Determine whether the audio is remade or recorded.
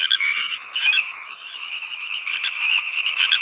remade